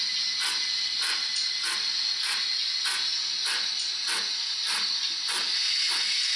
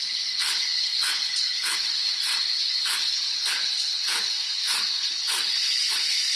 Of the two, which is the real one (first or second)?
first